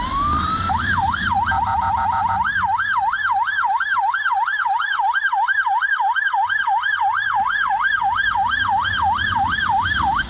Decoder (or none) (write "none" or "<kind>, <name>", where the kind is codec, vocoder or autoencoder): none